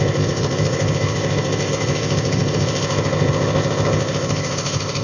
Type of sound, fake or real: fake